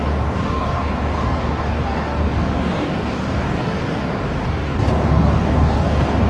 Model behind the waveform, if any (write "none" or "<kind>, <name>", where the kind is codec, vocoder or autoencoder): codec, DAC